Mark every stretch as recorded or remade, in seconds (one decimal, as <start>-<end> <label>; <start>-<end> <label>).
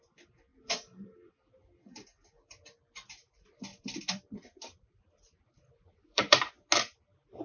0.0-0.5 recorded; 0.5-1.3 remade; 1.3-3.7 recorded; 3.7-6.5 remade; 6.5-7.4 recorded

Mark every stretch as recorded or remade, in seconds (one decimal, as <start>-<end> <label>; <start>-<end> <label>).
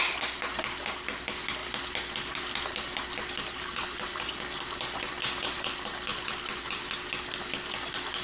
0.0-8.2 recorded